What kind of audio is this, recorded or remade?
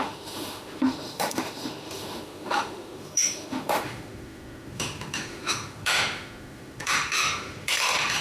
remade